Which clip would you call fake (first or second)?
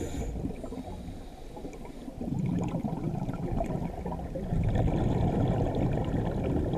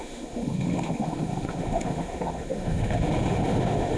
second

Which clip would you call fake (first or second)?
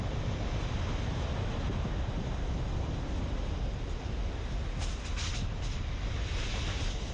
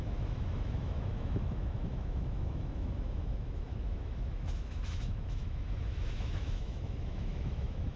second